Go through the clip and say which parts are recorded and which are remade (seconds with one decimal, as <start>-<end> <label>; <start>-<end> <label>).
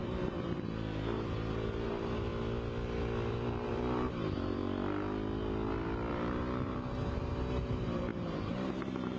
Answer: 0.0-2.3 remade; 2.3-3.3 recorded; 3.3-4.6 remade; 4.6-6.1 recorded; 6.1-9.2 remade